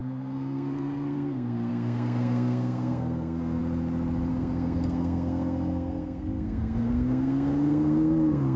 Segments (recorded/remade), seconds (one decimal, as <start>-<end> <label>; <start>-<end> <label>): 0.0-3.6 remade; 3.6-4.3 recorded; 4.3-8.6 remade